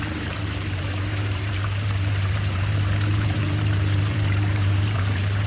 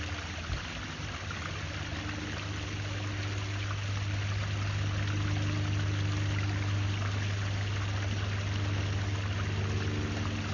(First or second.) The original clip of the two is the second